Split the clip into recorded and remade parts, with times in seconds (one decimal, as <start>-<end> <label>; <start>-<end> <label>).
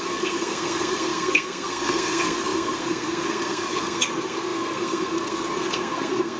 0.0-6.4 remade